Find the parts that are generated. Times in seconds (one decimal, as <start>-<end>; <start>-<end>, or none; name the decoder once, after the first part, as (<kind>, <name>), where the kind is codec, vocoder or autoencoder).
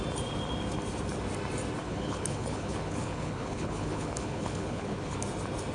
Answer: 1.8-5.2 (codec, HILCodec)